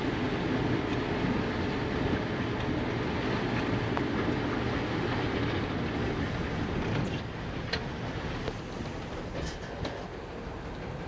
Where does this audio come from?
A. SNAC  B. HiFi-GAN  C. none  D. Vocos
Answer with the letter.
C